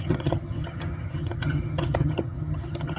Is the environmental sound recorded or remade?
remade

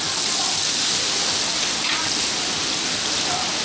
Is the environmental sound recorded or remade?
recorded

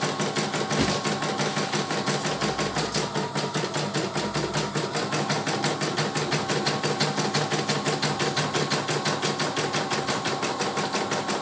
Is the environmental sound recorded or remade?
recorded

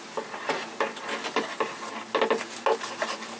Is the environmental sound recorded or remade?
recorded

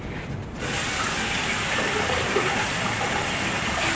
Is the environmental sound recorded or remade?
recorded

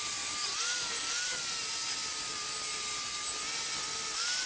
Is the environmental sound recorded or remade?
recorded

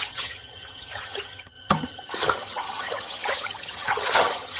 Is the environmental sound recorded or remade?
remade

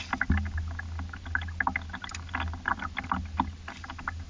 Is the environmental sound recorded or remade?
recorded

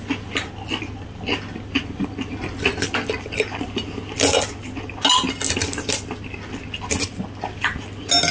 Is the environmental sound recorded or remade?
recorded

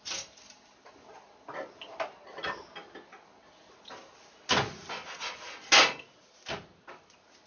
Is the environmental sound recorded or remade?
recorded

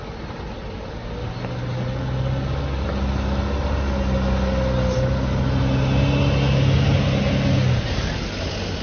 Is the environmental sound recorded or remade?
recorded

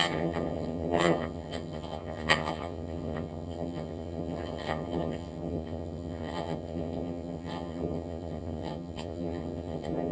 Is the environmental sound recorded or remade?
remade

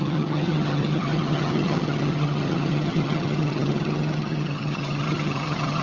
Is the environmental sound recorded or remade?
remade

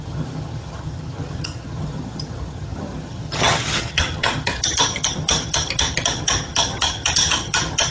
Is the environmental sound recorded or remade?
remade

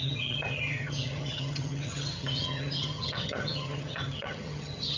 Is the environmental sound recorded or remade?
remade